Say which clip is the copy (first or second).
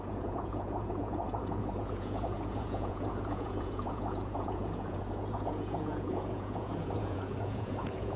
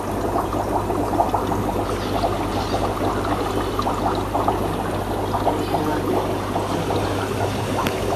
first